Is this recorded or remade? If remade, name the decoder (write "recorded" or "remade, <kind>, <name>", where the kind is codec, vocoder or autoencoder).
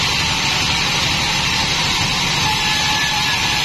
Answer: remade, vocoder, BigVGAN v2